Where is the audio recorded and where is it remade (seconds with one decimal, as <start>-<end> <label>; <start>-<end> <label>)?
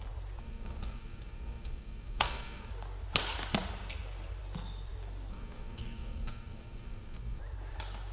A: 0.0-0.4 recorded; 0.4-2.7 remade; 2.7-5.3 recorded; 5.3-7.4 remade; 7.4-8.1 recorded